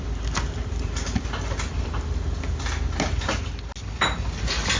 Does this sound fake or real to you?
real